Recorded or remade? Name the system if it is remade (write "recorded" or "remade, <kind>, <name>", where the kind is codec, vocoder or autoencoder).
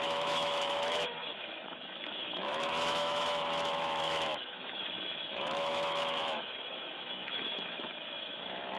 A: remade, autoencoder, DAC-VAE